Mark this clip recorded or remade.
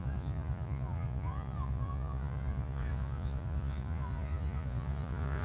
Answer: remade